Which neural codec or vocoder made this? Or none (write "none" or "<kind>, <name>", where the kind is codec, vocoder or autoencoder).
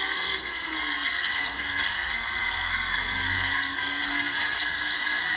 codec, SNAC